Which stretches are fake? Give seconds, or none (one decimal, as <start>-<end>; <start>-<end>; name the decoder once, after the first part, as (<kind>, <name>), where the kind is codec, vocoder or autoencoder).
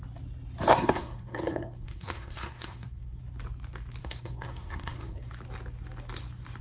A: 0.7-3.2 (codec, SNAC); 4.0-5.3